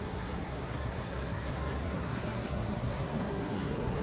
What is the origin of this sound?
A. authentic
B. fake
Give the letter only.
B